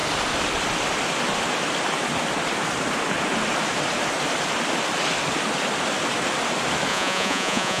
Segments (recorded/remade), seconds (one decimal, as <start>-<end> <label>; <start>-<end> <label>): 0.0-6.9 recorded; 6.9-7.8 remade